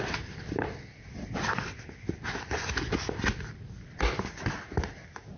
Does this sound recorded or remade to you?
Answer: recorded